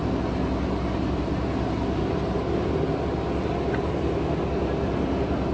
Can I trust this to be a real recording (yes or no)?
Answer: yes